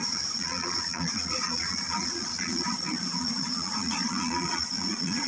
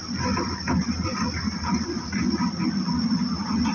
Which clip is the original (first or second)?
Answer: second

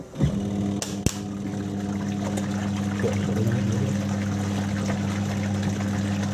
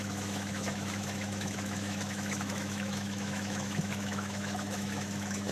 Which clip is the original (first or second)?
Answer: first